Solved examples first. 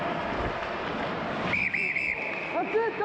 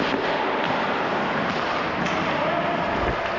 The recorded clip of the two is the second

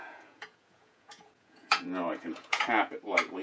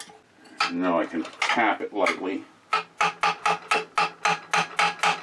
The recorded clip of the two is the second